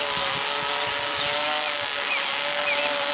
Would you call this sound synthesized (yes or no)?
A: no